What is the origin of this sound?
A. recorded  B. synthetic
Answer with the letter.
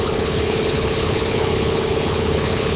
B